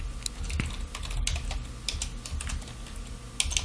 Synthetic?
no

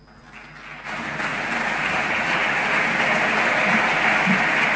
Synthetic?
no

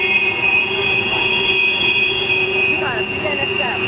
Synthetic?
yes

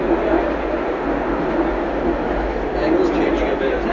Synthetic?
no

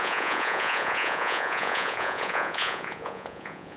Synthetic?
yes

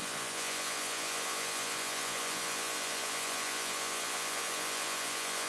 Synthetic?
yes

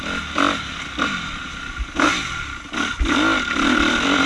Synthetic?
no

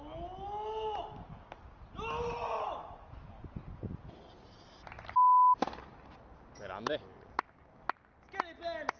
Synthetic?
no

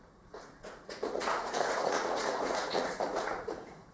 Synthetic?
yes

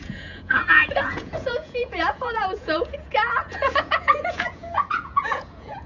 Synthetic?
yes